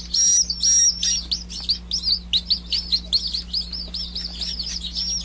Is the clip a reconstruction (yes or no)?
no